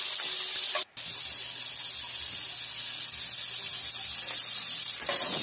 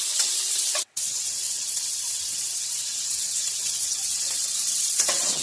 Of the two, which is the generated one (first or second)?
second